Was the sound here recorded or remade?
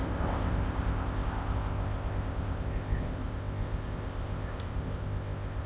remade